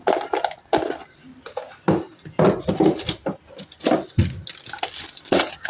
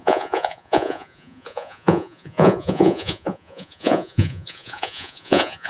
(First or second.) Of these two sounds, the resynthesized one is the second